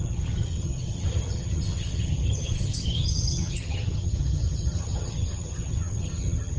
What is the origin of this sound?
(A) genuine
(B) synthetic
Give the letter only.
B